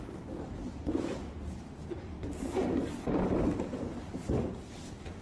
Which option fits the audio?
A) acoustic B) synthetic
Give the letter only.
A